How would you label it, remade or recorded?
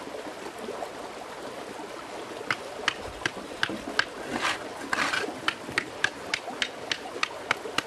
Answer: recorded